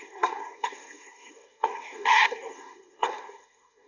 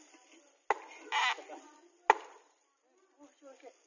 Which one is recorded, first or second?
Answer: second